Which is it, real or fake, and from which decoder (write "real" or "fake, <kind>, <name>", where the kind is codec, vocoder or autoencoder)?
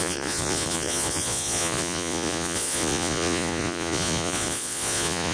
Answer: fake, vocoder, Vocos